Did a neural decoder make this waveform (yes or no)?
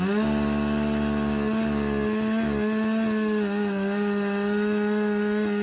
no